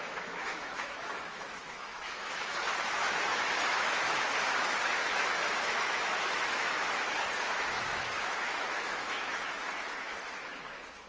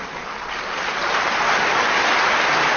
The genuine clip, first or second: second